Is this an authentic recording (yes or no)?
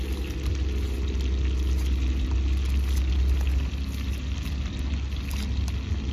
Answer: yes